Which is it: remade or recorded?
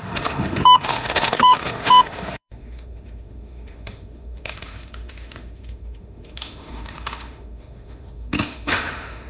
remade